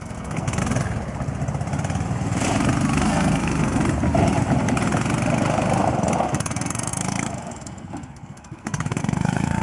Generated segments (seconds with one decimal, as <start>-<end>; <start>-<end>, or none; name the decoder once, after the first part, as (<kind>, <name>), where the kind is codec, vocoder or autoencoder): 0.0-0.6 (codec, SNAC); 3.0-3.8; 6.2-9.6